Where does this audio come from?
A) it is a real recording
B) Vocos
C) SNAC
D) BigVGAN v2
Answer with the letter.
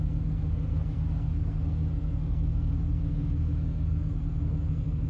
C